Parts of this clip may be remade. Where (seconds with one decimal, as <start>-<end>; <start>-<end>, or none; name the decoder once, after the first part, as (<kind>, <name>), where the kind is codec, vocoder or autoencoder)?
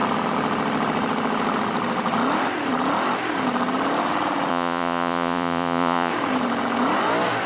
4.5-6.1 (vocoder, Vocos)